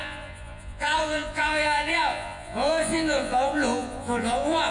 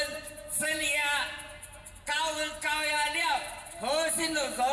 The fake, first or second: first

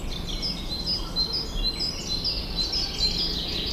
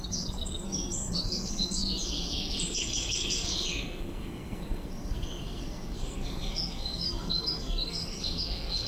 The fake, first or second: second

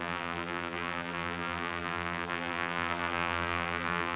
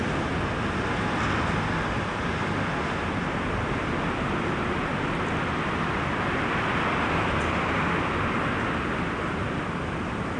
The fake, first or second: first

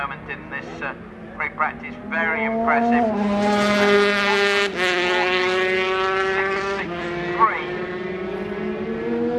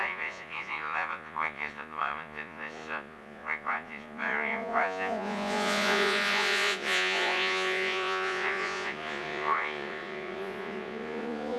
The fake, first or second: second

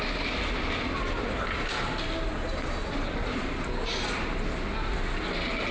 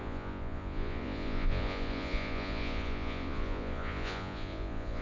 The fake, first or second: second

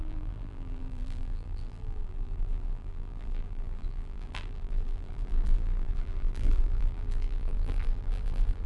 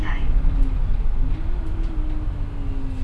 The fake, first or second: first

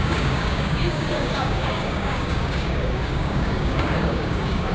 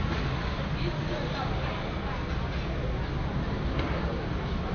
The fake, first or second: first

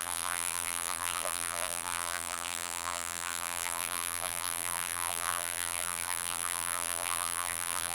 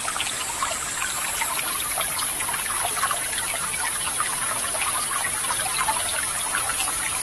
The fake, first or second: first